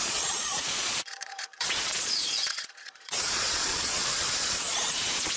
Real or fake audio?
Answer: fake